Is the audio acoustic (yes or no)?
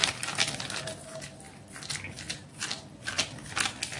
yes